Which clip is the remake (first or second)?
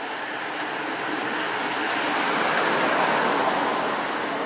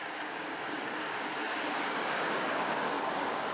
second